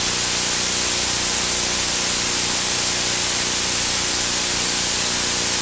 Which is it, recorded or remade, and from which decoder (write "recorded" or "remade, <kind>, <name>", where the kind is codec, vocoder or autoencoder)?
recorded